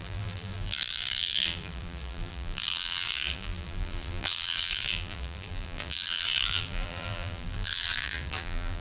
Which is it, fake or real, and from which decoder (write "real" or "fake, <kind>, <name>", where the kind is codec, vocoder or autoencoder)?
fake, vocoder, BigVGAN v2